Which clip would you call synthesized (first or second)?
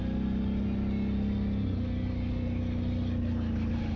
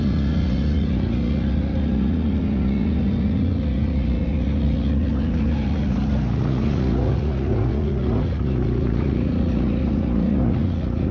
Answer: second